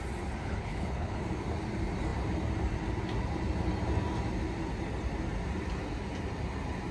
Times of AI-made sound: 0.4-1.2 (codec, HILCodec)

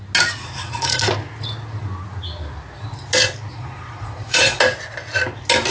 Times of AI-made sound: 0.4-1.0 (vocoder, Vocos); 3.5-4.6

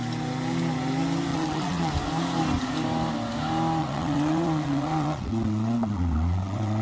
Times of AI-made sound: 1.3-1.9 (vocoder, WaveNeXt); 3.8-6.8